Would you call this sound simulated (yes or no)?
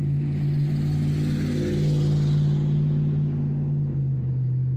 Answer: no